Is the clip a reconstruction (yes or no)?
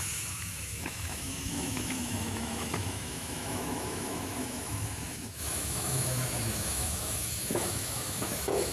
yes